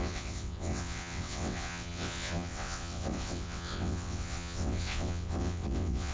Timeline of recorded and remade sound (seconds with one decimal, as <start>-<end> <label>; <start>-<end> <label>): 0.0-6.1 remade

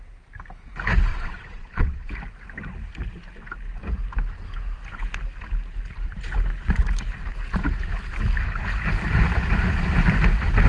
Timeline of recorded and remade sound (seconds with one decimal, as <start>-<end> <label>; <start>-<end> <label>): 0.0-1.1 recorded; 1.1-2.1 remade; 2.1-10.7 recorded